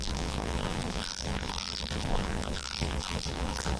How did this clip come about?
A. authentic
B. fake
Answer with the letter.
B